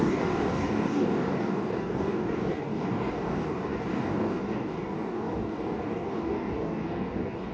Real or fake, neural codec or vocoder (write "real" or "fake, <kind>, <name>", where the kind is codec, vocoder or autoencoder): fake, codec, DAC